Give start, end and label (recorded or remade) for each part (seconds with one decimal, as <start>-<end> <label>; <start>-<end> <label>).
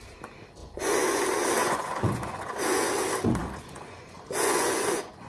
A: 0.0-0.6 recorded; 0.6-1.2 remade; 1.2-1.6 recorded; 1.6-2.9 remade; 2.9-3.4 recorded; 3.4-5.3 remade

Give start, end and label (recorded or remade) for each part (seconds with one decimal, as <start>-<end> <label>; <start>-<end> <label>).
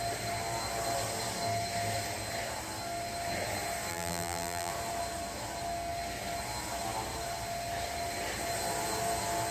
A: 0.0-3.9 recorded; 3.9-4.7 remade; 4.7-9.5 recorded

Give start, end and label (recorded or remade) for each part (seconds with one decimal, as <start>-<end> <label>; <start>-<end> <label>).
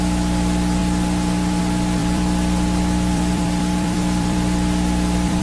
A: 0.0-0.8 recorded; 0.8-1.6 remade; 1.6-2.0 recorded; 2.0-5.4 remade